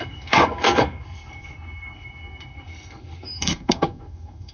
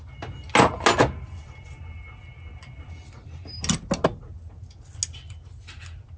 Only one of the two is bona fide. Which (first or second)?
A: second